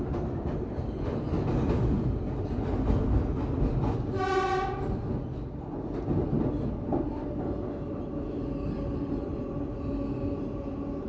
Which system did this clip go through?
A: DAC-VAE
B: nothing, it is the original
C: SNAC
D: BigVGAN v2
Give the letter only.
B